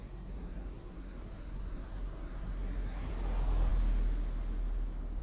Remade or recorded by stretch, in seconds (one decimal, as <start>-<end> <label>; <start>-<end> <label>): 0.0-3.1 remade; 3.1-5.2 recorded